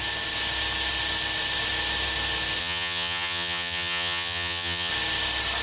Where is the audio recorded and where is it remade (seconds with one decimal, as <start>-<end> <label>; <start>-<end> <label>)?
0.0-2.6 recorded; 2.6-4.9 remade; 4.9-5.6 recorded